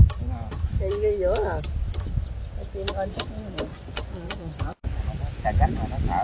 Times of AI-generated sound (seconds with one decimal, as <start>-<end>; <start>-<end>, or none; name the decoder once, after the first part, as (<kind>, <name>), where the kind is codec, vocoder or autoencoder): 3.7-5.0 (vocoder, Vocos)